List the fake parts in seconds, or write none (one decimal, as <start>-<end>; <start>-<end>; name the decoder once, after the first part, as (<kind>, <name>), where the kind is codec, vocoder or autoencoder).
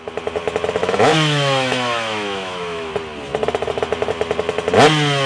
0.8-2.9 (autoencoder, DAC-VAE)